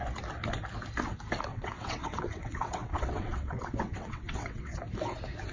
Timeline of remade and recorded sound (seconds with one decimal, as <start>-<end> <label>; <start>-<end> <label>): 0.0-1.5 recorded; 1.5-4.8 remade; 4.8-5.5 recorded